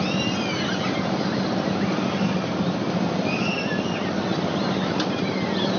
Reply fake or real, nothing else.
real